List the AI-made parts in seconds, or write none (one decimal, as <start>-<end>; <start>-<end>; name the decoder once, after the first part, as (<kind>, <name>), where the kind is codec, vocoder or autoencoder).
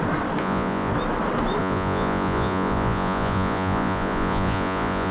0.4-0.9 (vocoder, Vocos); 1.6-5.1